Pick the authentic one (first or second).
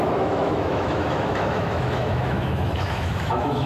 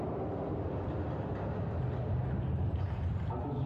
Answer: second